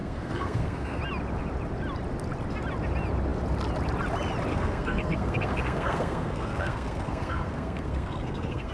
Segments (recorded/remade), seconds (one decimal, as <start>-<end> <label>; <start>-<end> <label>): 0.0-1.0 remade; 1.0-4.5 recorded; 4.5-8.7 remade